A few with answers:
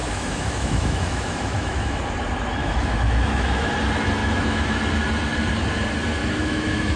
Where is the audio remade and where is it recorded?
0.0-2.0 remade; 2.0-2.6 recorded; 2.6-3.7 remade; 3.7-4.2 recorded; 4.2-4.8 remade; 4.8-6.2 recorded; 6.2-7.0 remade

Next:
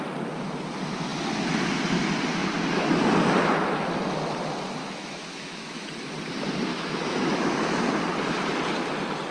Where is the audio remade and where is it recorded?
0.0-4.8 recorded; 4.8-5.9 remade; 5.9-6.7 recorded; 6.7-7.8 remade; 7.8-9.3 recorded

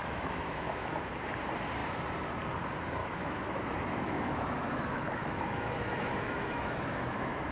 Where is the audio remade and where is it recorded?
0.0-0.9 remade; 0.9-3.0 recorded; 3.0-7.5 remade

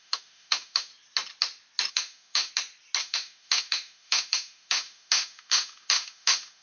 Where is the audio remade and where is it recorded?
0.0-0.9 remade; 0.9-1.9 recorded; 1.9-2.5 remade; 2.5-3.0 recorded; 3.0-6.6 remade